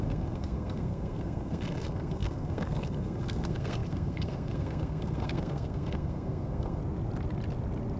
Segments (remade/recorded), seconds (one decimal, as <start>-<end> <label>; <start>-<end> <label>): 0.0-6.8 remade; 6.8-8.0 recorded